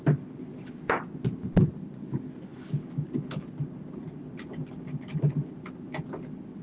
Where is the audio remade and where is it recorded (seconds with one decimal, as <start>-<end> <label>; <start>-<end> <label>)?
0.0-6.6 recorded